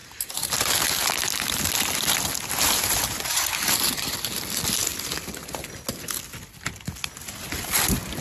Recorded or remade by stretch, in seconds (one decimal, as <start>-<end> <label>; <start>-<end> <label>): 0.0-8.2 recorded